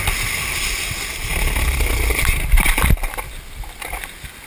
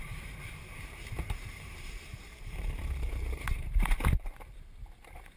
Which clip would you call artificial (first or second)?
second